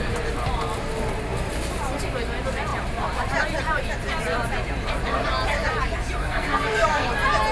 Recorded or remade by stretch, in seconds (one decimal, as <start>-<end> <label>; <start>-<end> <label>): 0.0-6.2 recorded; 6.2-7.1 remade; 7.1-7.5 recorded